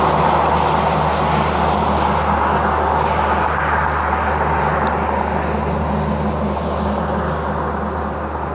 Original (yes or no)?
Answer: yes